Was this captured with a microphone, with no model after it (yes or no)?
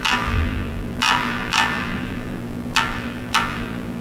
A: no